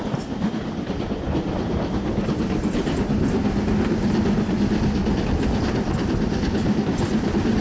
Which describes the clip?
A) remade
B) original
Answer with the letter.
B